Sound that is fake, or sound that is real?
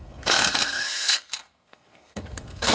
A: fake